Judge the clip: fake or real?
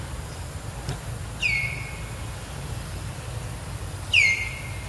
real